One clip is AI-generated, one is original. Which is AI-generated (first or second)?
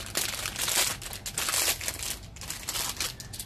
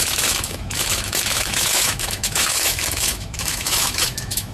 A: second